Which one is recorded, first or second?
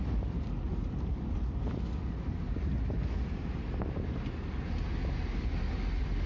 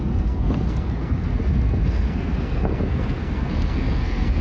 first